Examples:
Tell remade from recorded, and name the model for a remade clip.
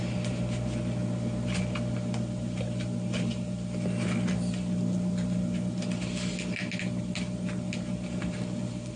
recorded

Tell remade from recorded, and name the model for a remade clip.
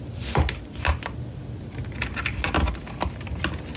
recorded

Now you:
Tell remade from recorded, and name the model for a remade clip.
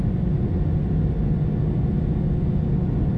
recorded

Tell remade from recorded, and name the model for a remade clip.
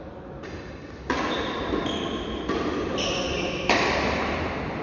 recorded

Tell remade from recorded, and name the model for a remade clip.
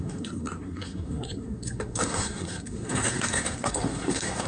remade, codec, SNAC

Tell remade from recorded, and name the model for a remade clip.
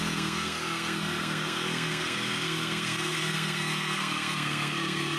remade, codec, SNAC